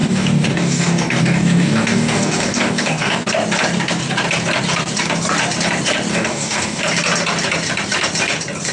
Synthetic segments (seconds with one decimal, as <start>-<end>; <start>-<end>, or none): 0.0-3.2; 6.1-6.8